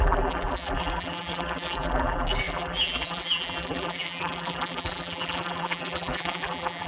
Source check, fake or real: fake